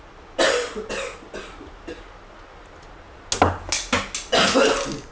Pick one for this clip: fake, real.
real